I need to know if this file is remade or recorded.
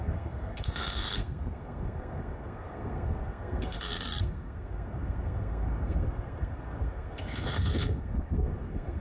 remade